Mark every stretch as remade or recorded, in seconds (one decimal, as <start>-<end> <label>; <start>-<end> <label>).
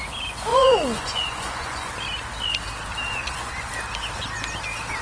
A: 0.0-0.5 recorded; 0.5-1.9 remade; 1.9-3.1 recorded; 3.1-3.7 remade; 3.7-5.0 recorded